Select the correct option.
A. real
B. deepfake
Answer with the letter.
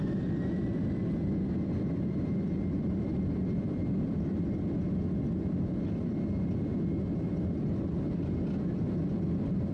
A